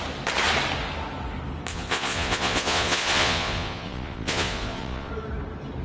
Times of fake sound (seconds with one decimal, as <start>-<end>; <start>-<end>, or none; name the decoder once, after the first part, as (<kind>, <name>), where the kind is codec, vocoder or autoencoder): 1.7-5.1 (vocoder, Vocos)